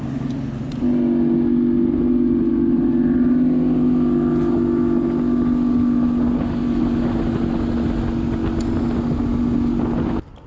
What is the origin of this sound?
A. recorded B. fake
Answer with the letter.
A